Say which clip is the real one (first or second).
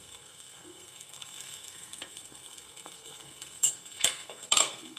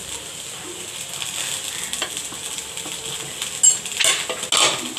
second